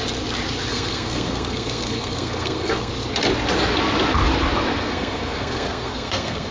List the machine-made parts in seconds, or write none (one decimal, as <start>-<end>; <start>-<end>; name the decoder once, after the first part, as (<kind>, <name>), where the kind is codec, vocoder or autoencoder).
0.7-2.9 (codec, SNAC); 4.8-6.5